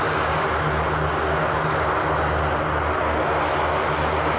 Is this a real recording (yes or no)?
yes